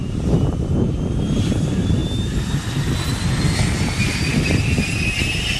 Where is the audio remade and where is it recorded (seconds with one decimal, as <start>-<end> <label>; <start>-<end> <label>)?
0.0-2.0 remade; 2.0-5.6 recorded